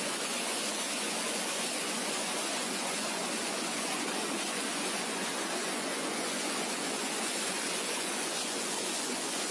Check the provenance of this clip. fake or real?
fake